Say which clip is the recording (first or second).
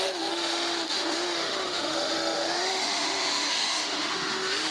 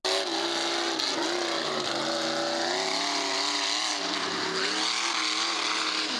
second